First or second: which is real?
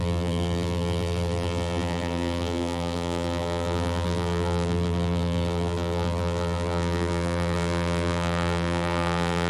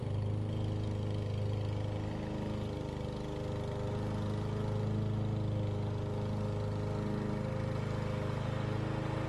second